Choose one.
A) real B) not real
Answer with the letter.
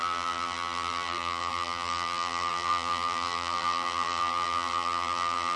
B